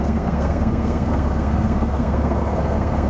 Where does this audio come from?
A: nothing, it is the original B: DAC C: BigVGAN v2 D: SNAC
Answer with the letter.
D